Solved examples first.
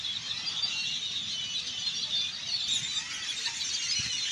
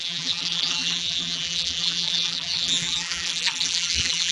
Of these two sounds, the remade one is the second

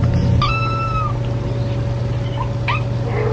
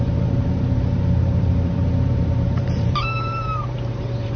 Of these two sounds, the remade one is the second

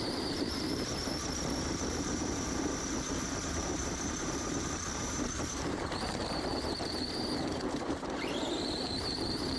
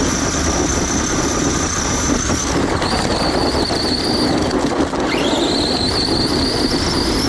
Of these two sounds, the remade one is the first